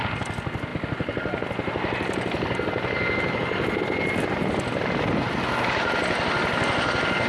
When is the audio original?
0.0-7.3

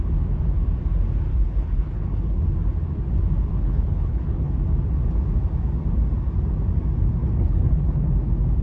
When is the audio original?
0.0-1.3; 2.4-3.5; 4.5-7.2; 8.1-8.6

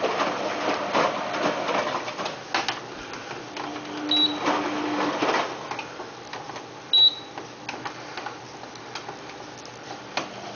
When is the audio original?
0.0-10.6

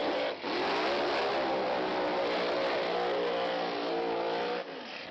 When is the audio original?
0.0-5.1

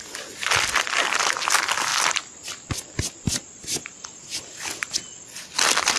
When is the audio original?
0.0-6.0